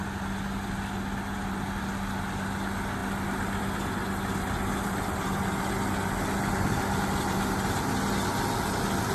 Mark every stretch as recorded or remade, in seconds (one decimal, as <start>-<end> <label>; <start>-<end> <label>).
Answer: 0.0-9.1 recorded

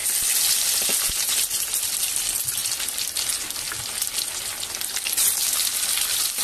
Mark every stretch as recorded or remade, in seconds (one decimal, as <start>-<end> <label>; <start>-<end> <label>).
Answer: 0.0-6.4 recorded

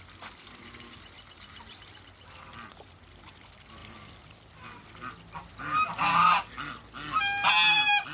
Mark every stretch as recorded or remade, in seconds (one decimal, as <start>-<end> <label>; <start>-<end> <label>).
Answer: 0.0-8.1 recorded